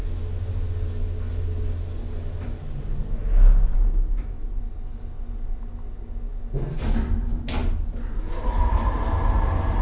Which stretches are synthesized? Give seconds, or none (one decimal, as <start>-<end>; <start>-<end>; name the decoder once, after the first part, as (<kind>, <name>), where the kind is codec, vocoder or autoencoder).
none